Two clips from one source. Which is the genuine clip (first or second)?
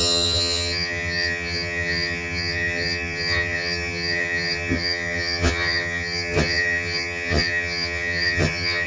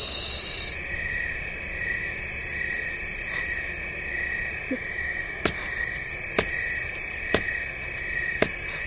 second